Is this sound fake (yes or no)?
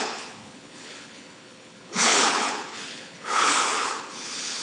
yes